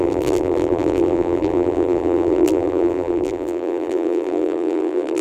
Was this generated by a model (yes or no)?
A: yes